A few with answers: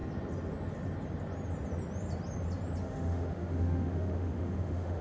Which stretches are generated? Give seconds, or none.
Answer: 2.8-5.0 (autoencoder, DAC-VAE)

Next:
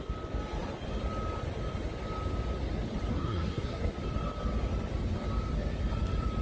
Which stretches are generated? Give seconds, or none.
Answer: 3.1-3.9 (codec, SNAC)